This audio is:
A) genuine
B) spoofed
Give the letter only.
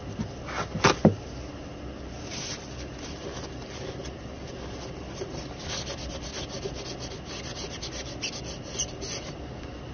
A